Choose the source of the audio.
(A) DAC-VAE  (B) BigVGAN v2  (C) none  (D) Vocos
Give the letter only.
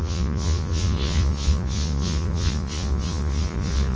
D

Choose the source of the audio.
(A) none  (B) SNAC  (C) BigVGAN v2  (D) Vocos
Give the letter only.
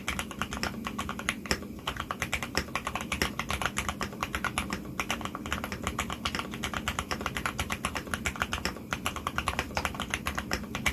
A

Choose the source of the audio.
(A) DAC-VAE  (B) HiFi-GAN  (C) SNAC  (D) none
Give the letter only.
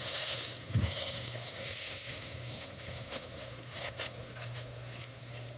C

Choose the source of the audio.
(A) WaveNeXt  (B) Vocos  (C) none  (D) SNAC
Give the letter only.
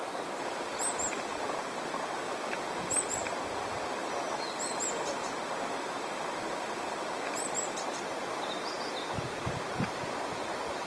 C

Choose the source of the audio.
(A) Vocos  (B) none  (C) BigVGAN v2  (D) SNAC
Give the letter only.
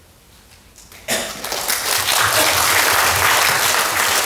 B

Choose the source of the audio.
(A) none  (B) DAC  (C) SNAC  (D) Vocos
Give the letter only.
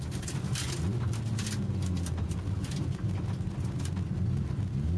A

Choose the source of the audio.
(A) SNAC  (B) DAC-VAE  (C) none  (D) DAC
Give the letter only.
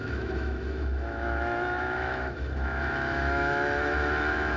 B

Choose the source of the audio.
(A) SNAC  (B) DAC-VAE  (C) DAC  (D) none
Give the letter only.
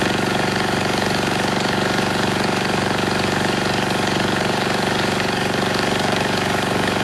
C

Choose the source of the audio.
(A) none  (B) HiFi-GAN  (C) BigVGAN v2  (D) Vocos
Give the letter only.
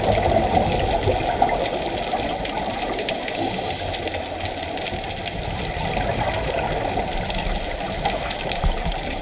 A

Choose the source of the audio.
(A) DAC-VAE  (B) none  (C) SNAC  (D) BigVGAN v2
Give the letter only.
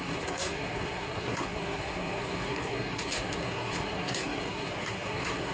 C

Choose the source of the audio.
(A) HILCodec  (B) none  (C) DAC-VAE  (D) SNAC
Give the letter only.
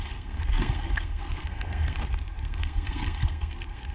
D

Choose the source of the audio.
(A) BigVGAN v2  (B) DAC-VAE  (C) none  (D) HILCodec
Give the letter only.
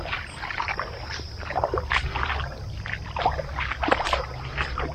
C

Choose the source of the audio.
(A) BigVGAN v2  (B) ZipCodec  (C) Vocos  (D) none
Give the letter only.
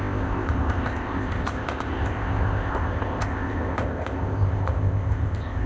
B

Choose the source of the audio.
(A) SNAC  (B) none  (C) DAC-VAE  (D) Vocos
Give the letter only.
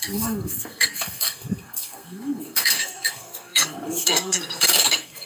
A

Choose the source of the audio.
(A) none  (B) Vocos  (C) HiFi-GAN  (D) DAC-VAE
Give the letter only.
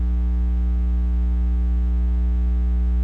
A